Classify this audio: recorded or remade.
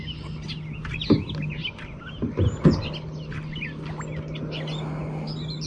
recorded